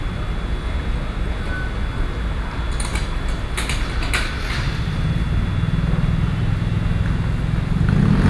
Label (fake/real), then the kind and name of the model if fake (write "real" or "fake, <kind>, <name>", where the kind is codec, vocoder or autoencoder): real